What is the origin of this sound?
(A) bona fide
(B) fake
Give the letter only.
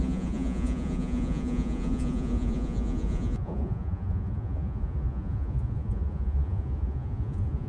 B